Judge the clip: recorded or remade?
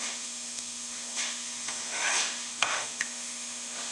remade